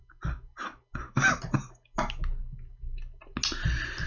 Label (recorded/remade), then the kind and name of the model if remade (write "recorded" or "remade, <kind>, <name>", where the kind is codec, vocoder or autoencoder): recorded